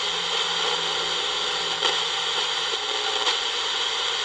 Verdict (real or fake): real